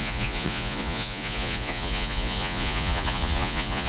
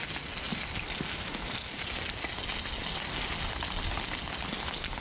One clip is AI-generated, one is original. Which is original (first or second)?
second